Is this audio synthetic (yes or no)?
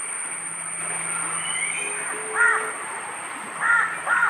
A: no